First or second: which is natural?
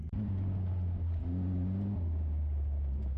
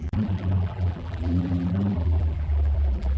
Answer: first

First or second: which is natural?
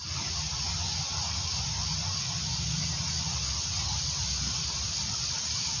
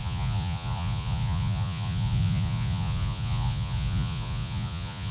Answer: first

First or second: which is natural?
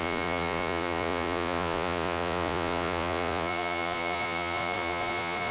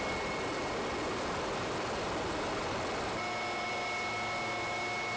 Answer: second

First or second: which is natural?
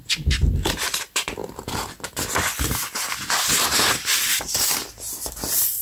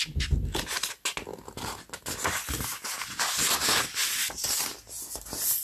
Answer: second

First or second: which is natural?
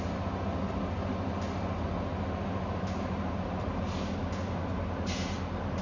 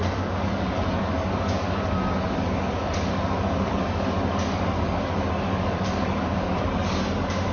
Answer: first